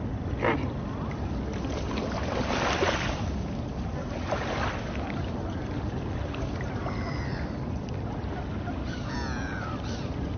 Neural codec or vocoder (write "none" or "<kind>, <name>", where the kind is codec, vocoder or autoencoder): none